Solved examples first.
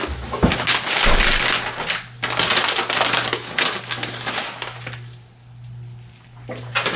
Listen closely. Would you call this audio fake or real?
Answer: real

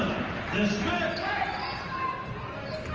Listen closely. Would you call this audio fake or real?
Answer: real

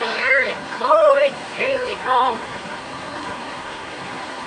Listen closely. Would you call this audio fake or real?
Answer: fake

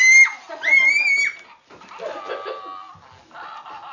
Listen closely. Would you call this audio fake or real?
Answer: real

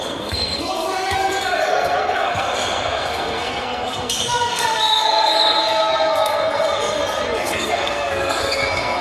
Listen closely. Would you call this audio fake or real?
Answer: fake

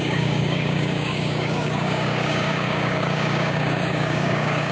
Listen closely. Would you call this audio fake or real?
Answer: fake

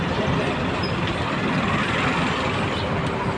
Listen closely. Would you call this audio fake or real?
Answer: real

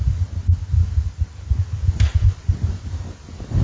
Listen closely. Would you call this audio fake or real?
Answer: real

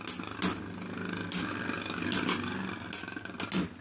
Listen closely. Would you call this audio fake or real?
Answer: real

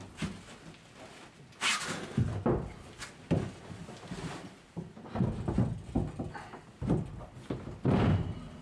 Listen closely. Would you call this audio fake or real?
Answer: real